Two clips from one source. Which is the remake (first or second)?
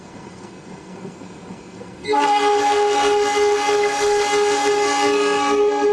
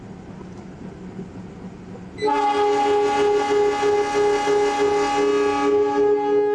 first